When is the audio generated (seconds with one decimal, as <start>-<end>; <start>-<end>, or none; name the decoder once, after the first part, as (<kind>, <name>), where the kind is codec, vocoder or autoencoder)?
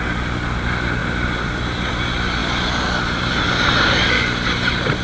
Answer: none